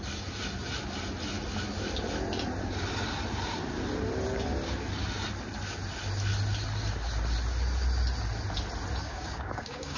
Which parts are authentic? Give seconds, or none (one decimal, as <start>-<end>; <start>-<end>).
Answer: 0.0-9.0